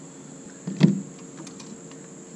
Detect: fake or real real